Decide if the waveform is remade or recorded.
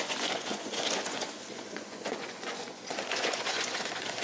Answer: remade